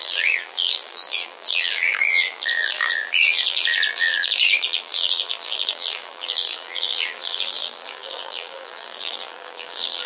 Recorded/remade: remade